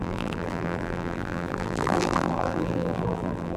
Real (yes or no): no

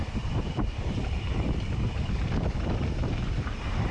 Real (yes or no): no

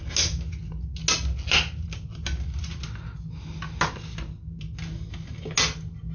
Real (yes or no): yes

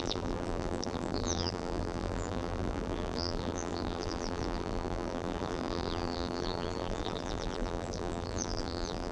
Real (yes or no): no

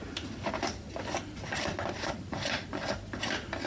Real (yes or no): no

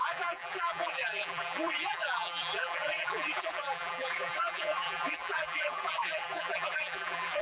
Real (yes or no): no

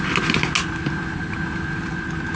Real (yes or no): yes